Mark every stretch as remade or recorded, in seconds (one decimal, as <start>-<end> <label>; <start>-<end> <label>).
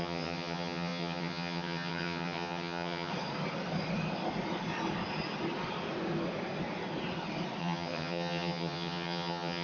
0.0-3.1 remade; 3.1-7.6 recorded; 7.6-9.6 remade